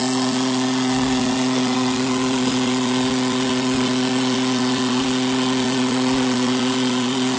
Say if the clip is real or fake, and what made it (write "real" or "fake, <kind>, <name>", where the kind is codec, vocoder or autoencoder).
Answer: fake, vocoder, Vocos